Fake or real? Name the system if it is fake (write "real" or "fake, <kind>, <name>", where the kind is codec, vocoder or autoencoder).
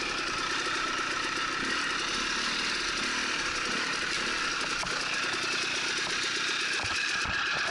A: real